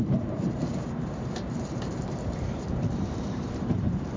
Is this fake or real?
fake